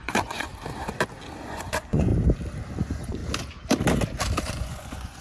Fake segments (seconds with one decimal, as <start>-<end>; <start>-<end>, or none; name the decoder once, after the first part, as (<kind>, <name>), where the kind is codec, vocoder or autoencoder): 0.0-0.5 (vocoder, Vocos); 1.4-2.1; 2.7-3.2; 4.4-5.2